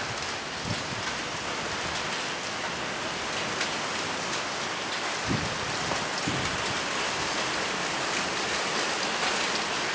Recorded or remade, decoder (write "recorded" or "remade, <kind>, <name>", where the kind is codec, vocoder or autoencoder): recorded